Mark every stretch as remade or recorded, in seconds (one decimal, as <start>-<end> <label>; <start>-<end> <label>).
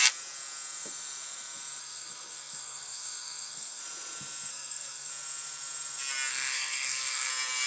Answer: 0.0-1.8 recorded; 1.8-3.8 remade; 3.8-4.5 recorded; 4.5-5.1 remade; 5.1-6.3 recorded; 6.3-7.3 remade; 7.3-7.7 recorded